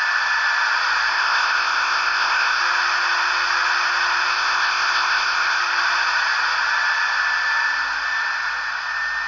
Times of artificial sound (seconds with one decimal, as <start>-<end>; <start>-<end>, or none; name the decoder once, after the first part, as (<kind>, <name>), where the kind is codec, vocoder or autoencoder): 1.1-2.6 (codec, ZipCodec); 4.3-5.6